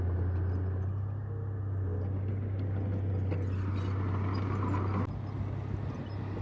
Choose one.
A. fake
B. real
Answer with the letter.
B